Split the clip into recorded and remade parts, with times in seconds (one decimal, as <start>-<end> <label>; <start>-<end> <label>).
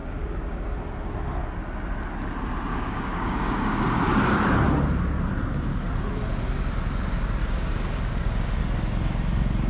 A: 0.0-0.7 remade; 0.7-2.7 recorded; 2.7-3.8 remade; 3.8-7.4 recorded; 7.4-8.6 remade; 8.6-9.7 recorded